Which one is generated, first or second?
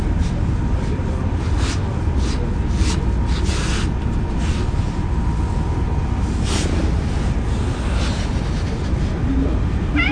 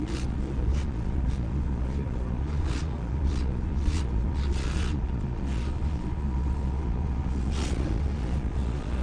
second